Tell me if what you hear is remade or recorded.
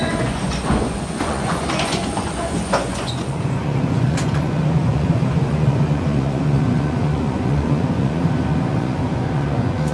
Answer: remade